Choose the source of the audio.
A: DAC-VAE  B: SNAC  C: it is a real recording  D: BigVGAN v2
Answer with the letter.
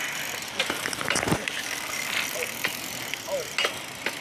C